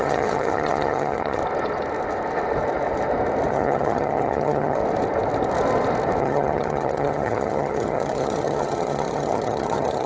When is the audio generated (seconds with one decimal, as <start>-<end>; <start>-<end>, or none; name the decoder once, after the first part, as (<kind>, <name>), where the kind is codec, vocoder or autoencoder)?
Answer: 0.0-1.4 (vocoder, HiFi-GAN); 3.5-4.8; 6.2-10.1